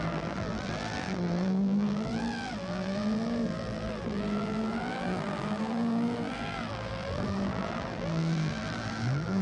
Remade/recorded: remade